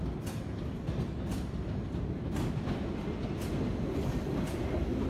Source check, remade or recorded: recorded